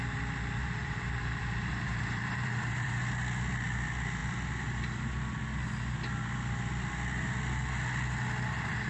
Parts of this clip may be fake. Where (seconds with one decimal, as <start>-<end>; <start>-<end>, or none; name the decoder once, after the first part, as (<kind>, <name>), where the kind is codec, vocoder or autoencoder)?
0.6-3.0 (vocoder, BigVGAN v2)